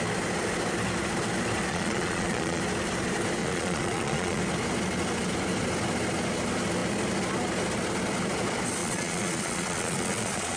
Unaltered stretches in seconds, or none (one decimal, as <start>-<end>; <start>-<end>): 0.0-1.7; 2.6-3.4; 4.4-8.8